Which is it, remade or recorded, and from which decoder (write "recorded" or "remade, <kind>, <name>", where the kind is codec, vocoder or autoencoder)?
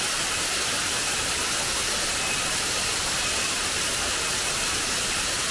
recorded